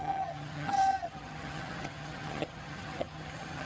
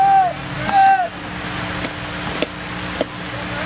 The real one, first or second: second